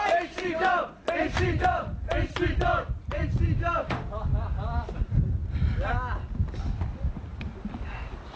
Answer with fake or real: real